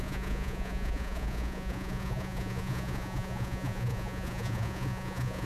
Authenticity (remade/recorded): remade